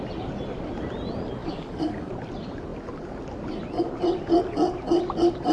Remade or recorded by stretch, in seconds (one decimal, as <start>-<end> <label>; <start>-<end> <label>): 0.0-1.4 recorded; 1.4-2.1 remade; 2.1-5.5 recorded